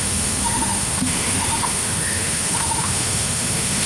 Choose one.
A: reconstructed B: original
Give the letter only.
A